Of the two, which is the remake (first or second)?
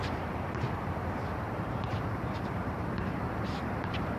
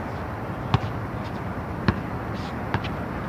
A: first